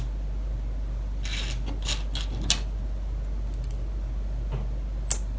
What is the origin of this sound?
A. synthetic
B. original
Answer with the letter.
B